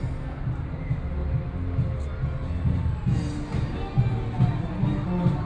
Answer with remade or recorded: recorded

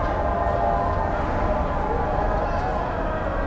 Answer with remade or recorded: recorded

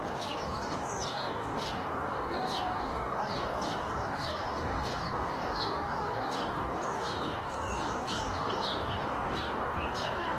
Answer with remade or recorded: remade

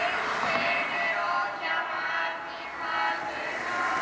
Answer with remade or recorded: recorded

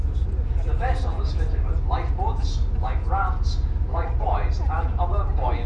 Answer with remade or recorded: recorded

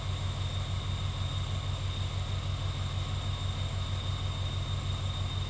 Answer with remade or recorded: recorded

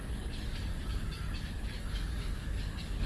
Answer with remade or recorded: remade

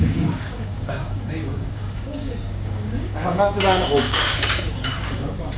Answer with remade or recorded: remade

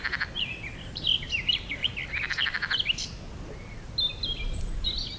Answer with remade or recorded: recorded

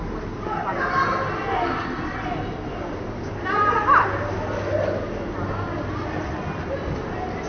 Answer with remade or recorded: recorded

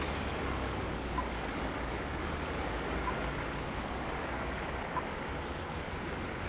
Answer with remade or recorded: remade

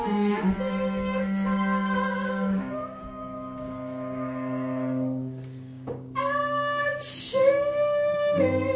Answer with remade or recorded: remade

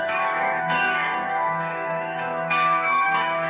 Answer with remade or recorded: remade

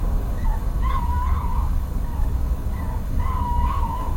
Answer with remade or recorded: remade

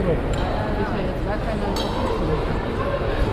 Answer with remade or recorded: recorded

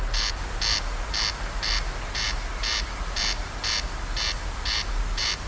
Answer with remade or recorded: recorded